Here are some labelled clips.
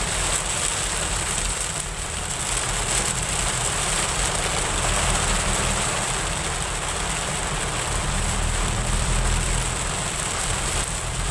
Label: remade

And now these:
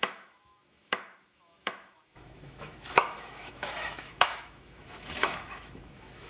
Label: remade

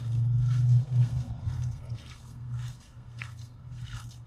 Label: remade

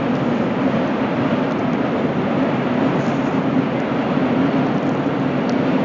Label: recorded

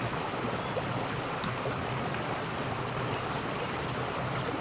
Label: recorded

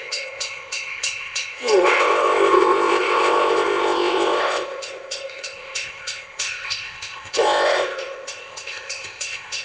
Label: remade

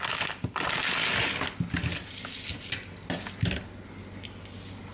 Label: recorded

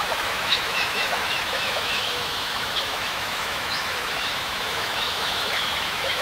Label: remade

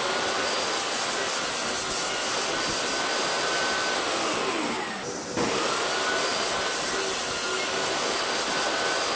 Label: recorded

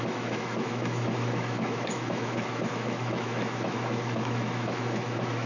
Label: remade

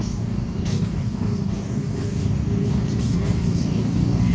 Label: remade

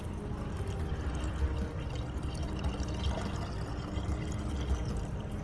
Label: recorded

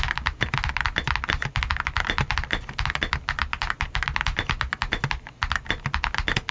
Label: recorded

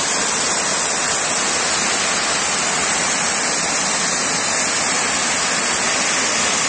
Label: recorded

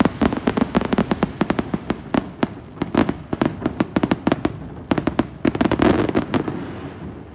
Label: recorded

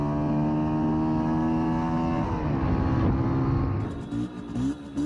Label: recorded